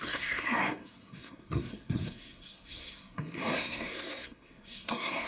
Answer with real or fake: fake